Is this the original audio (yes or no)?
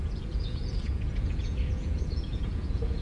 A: no